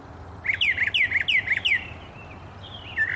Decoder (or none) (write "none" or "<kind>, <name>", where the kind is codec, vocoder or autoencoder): none